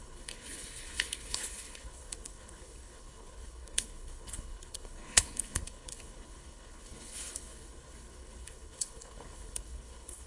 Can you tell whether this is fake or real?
fake